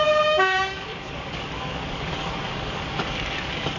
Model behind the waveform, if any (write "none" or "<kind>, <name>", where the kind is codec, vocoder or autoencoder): codec, DAC